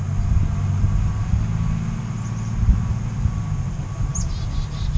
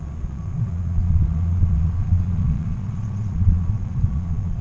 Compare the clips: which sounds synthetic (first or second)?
second